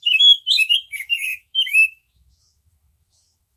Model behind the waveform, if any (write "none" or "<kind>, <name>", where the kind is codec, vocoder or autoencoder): autoencoder, DAC-VAE